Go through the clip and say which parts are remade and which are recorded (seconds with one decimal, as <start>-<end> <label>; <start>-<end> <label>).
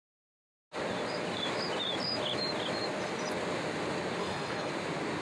0.0-4.2 recorded; 4.2-4.7 remade; 4.7-5.2 recorded